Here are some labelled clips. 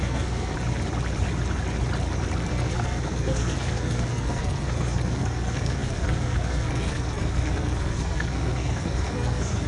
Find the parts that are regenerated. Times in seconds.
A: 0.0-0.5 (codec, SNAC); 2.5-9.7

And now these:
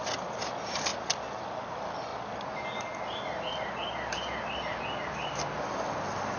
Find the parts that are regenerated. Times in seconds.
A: none

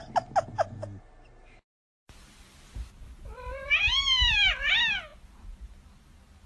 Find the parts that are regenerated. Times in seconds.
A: none